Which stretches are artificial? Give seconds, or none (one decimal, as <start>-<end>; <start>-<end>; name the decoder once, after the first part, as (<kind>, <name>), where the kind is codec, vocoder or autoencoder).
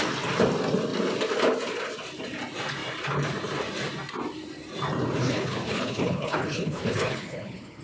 5.2-7.8 (codec, HILCodec)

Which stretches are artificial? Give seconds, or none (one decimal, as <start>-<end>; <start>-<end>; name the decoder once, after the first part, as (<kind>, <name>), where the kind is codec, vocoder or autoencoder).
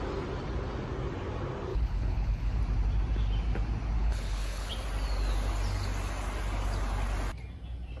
1.7-2.6 (codec, HILCodec); 4.0-4.7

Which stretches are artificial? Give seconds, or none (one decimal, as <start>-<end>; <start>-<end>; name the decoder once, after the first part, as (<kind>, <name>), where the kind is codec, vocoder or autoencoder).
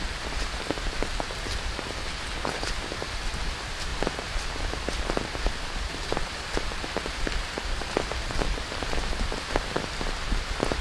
2.1-2.7 (codec, HILCodec)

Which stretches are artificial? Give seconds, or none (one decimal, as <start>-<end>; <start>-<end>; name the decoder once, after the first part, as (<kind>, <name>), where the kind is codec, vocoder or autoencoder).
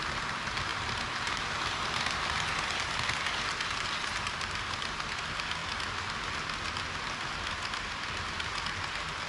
none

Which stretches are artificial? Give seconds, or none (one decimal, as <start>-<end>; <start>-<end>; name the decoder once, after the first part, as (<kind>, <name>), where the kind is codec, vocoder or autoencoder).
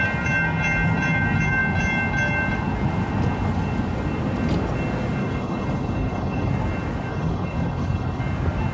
5.2-6.5 (codec, HILCodec); 7.1-8.2